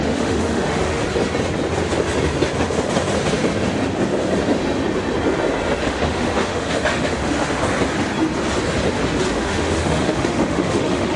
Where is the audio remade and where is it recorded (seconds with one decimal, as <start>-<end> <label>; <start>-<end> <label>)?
0.0-1.0 remade; 1.0-5.8 recorded; 5.8-7.6 remade; 7.6-9.3 recorded; 9.3-11.2 remade